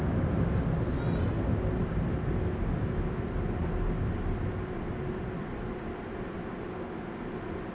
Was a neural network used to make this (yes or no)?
no